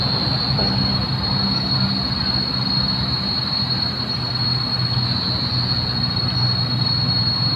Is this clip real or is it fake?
real